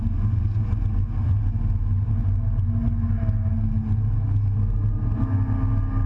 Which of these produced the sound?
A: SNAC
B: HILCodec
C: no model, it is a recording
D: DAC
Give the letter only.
C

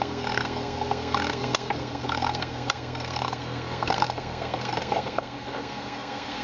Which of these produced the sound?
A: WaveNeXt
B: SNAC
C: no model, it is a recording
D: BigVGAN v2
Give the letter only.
B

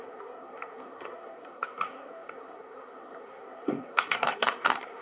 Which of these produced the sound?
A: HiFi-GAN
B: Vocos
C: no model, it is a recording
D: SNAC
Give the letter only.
D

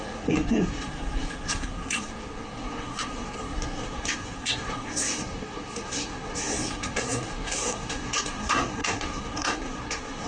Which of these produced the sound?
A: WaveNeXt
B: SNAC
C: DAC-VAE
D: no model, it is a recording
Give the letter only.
B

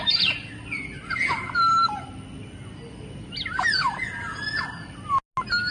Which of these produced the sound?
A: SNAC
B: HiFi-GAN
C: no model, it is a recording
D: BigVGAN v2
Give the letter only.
C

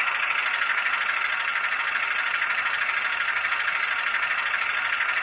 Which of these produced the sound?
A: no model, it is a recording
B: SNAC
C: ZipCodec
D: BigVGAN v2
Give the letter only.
A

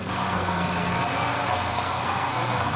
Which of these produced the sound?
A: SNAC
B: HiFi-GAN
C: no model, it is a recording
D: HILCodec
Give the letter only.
A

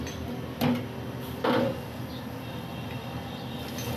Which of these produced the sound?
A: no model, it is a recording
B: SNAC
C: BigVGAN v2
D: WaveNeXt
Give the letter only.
A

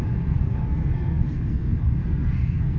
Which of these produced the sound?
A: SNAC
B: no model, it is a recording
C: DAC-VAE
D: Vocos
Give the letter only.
A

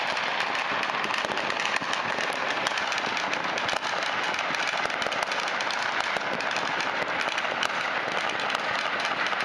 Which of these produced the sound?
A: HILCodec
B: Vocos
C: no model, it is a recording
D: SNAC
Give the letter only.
C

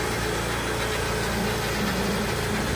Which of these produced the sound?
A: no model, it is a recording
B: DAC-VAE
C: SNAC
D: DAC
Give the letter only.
A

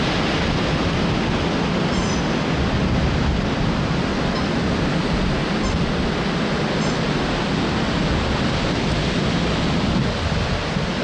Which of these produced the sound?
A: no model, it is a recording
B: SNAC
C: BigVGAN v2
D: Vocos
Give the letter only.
A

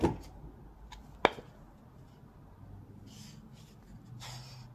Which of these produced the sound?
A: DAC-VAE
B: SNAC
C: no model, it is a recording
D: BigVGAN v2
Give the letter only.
C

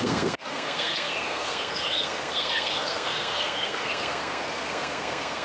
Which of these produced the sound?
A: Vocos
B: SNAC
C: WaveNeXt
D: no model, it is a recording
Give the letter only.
B